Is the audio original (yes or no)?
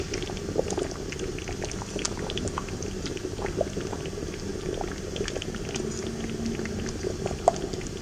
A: yes